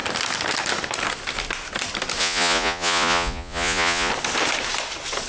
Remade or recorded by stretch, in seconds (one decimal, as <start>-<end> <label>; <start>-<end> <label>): 0.0-2.2 recorded; 2.2-4.1 remade; 4.1-5.3 recorded